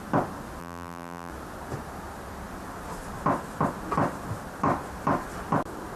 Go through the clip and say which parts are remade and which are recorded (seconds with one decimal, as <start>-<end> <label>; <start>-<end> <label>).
0.0-0.6 recorded; 0.6-1.3 remade; 1.3-6.0 recorded